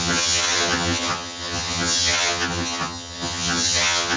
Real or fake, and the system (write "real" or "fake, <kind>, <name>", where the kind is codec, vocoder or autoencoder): fake, vocoder, HiFi-GAN